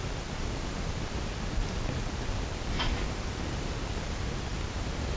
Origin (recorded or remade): recorded